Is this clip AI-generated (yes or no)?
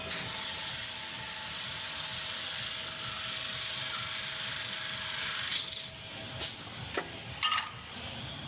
no